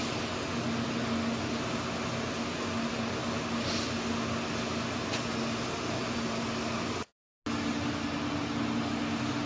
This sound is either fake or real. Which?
real